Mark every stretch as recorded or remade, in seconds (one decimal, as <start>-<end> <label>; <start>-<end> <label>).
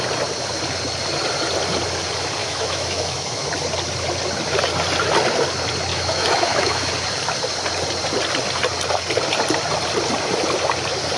0.0-2.4 recorded; 2.4-3.5 remade; 3.5-5.9 recorded; 5.9-6.9 remade; 6.9-11.2 recorded